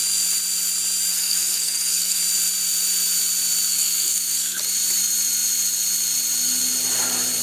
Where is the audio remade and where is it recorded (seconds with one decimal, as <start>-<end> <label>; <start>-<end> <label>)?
0.0-1.1 recorded; 1.1-2.2 remade; 2.2-3.7 recorded; 3.7-4.6 remade; 4.6-7.4 recorded